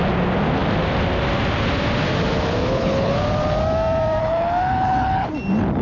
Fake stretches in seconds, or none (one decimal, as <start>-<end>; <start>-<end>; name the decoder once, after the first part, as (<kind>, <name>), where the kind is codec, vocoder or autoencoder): 2.6-3.1 (codec, HILCodec); 4.2-5.3